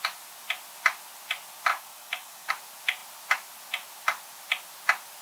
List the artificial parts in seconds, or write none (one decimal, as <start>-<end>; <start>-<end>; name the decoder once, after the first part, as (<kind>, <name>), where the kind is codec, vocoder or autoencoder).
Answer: 1.7-2.5 (codec, DAC)